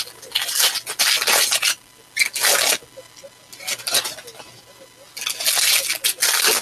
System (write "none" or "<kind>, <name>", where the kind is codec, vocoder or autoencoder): none